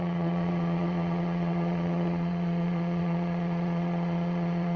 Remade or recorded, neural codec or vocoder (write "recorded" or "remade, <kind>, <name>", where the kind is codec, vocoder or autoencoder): remade, vocoder, Vocos